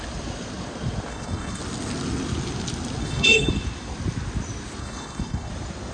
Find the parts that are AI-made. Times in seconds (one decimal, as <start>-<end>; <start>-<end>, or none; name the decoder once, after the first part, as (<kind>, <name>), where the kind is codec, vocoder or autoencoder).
1.1-1.6 (codec, HILCodec); 3.0-3.5; 4.8-5.5